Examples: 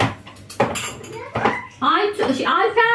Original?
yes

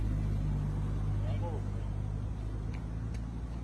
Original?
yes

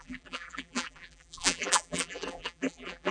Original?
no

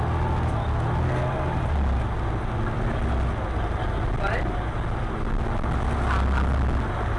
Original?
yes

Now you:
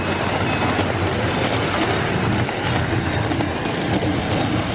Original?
yes